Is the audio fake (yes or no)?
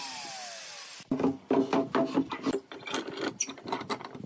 no